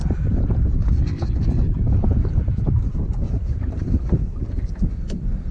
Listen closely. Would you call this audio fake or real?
real